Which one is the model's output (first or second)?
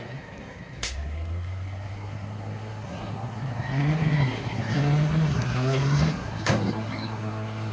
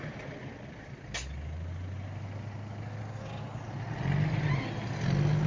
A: first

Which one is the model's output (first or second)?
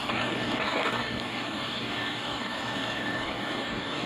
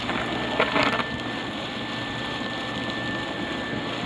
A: first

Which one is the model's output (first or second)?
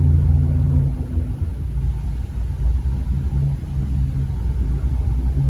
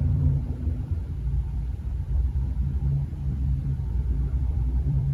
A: second